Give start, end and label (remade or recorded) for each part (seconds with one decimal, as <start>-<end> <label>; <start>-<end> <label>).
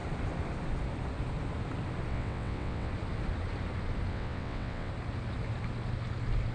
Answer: 0.0-2.1 recorded; 2.1-2.9 remade; 2.9-4.1 recorded; 4.1-4.9 remade; 4.9-6.5 recorded